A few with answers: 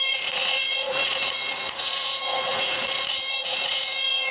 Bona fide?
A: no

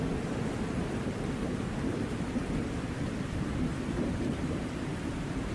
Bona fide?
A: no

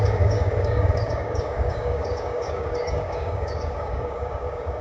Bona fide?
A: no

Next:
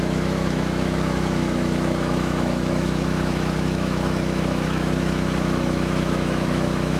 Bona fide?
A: no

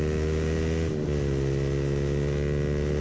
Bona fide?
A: yes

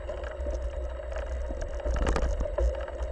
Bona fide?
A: yes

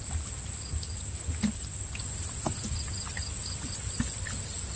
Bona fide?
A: yes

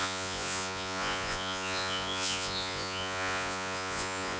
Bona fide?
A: no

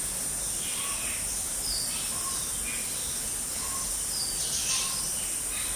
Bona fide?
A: yes